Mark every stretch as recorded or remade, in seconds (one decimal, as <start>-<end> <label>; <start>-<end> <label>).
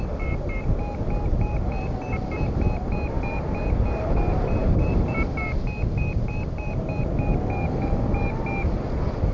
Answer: 0.0-9.3 recorded